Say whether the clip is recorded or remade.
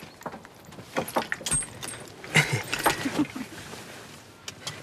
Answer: recorded